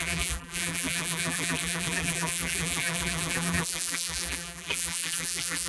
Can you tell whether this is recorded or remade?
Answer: remade